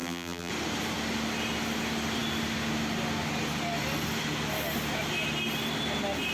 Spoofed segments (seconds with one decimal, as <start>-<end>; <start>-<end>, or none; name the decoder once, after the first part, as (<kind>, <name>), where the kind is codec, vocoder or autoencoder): 0.0-0.5 (vocoder, BigVGAN v2)